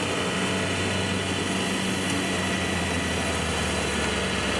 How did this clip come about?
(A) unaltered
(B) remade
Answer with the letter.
A